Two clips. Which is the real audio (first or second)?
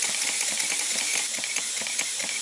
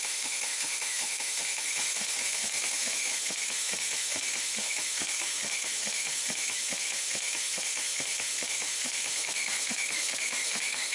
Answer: first